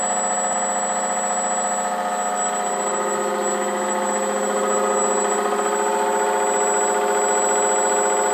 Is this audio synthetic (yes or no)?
no